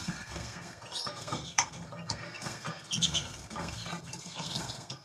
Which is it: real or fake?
fake